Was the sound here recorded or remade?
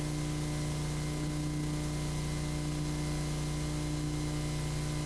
recorded